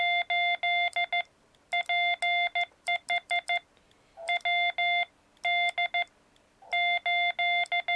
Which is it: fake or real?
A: real